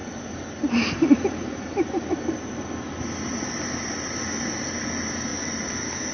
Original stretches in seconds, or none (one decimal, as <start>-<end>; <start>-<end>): 2.7-5.3